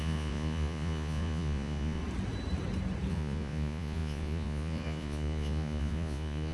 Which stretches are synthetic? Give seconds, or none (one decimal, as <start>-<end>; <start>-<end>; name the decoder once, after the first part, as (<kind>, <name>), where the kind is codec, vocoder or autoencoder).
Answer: 0.0-2.0 (vocoder, Vocos); 3.1-6.5